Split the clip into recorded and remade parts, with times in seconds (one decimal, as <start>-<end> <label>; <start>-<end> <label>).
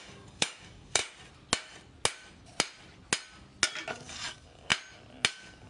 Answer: 0.0-1.0 remade; 1.0-3.9 recorded; 3.9-4.7 remade; 4.7-5.3 recorded; 5.3-5.7 remade